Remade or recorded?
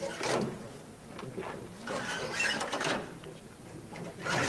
recorded